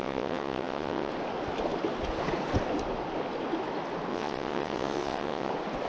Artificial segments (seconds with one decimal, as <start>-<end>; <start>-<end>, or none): 0.0-1.1; 4.1-5.5

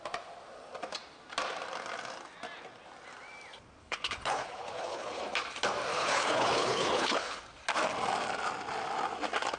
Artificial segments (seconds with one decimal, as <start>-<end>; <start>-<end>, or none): 3.8-5.2; 5.9-7.4

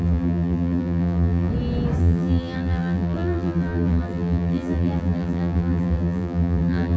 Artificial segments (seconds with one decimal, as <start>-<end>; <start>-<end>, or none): 0.0-1.5; 2.0-7.0

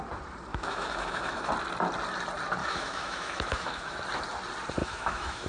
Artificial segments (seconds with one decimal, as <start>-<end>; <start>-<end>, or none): 0.5-1.5; 2.6-4.0; 4.8-5.5

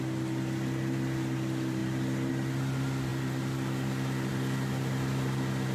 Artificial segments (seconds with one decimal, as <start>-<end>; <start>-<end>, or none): none

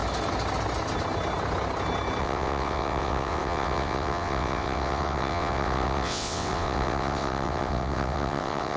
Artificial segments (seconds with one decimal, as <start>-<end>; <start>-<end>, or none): 2.2-8.8